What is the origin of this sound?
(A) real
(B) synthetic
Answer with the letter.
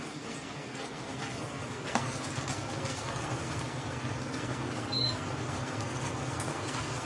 B